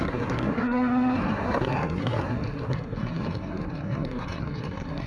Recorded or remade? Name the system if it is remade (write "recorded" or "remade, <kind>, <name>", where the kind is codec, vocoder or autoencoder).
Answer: remade, codec, SNAC